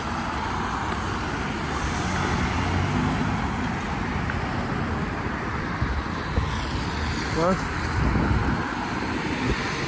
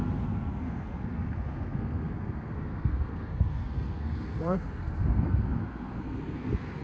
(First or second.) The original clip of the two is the first